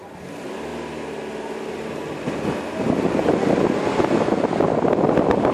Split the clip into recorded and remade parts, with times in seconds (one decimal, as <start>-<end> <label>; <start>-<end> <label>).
0.0-5.5 recorded